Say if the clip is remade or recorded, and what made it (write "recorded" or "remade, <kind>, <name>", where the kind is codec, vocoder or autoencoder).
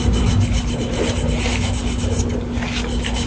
recorded